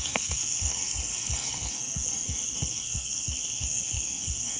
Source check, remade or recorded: remade